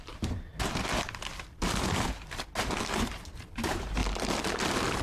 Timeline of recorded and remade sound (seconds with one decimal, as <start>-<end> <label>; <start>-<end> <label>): 0.0-0.5 remade; 0.5-3.5 recorded; 3.5-4.0 remade; 4.0-5.0 recorded